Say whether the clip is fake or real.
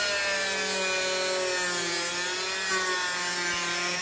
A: real